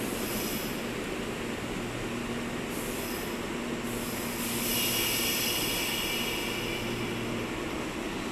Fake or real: real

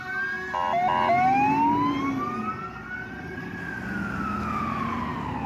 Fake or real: real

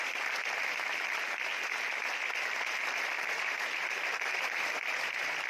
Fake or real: real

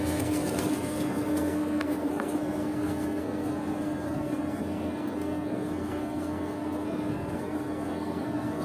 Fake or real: fake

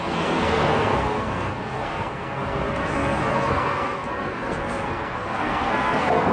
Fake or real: fake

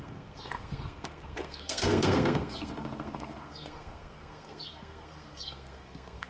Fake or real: fake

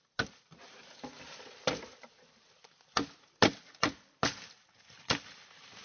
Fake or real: real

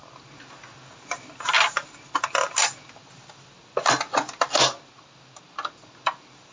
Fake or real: real